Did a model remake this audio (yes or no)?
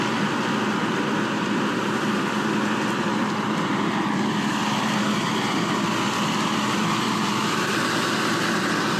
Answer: no